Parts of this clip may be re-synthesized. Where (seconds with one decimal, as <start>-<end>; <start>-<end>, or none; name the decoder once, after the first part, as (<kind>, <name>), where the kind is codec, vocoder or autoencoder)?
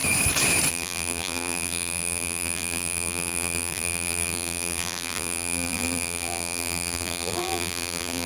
0.7-8.3 (vocoder, BigVGAN v2)